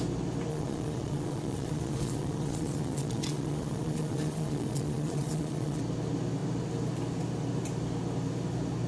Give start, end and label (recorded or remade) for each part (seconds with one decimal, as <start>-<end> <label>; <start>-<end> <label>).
0.0-0.5 recorded; 0.5-5.8 remade; 5.8-8.9 recorded